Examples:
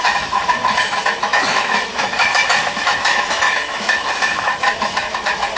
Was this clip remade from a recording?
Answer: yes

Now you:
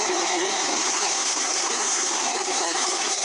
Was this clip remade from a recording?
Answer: yes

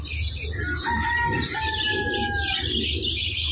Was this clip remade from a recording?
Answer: no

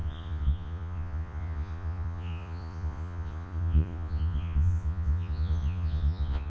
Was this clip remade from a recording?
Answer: yes